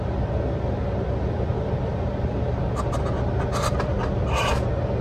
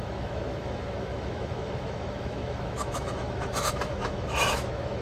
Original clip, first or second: first